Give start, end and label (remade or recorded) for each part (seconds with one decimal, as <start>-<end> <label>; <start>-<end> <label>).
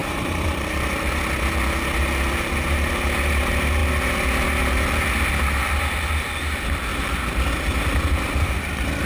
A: 0.0-1.2 remade; 1.2-6.9 recorded; 6.9-7.5 remade; 7.5-9.1 recorded